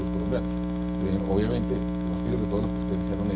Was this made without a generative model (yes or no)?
yes